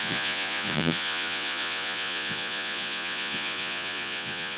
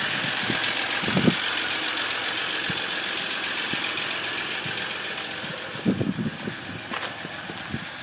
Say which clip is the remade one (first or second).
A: first